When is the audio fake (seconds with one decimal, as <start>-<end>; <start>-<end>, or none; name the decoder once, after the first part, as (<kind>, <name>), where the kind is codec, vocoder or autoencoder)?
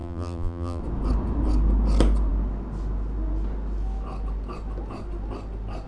0.0-0.8 (vocoder, BigVGAN v2)